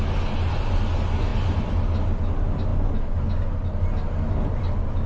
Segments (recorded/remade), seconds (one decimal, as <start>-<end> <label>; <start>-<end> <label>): 0.0-1.3 recorded; 1.3-2.2 remade; 2.2-5.1 recorded